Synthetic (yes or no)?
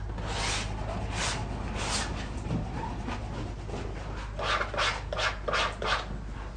no